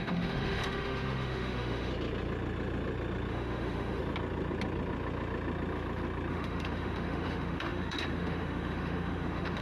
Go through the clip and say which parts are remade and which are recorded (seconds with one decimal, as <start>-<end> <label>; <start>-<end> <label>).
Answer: 0.0-1.9 remade; 1.9-3.3 recorded; 3.3-4.0 remade; 4.0-6.3 recorded; 6.3-9.6 remade